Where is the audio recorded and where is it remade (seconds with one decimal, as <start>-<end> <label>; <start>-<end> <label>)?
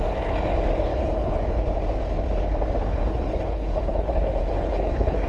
0.0-0.9 recorded; 0.9-1.4 remade; 1.4-3.0 recorded; 3.0-5.3 remade